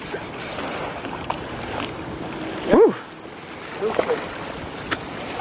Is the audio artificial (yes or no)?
yes